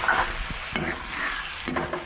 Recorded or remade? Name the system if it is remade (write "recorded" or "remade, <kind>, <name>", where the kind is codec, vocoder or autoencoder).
recorded